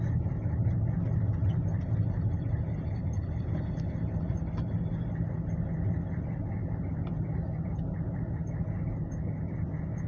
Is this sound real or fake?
real